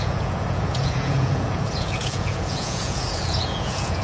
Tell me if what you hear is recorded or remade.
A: remade